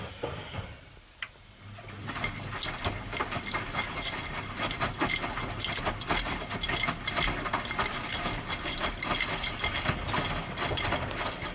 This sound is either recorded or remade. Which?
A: recorded